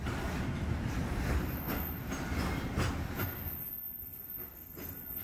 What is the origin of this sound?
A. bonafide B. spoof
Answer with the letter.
A